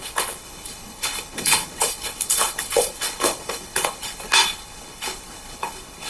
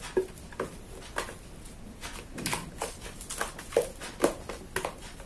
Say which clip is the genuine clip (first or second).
second